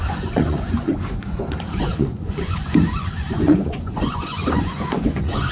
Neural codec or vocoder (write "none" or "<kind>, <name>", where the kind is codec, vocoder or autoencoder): vocoder, Vocos